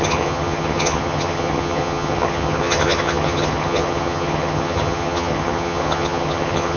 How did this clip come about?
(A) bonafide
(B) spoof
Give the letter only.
B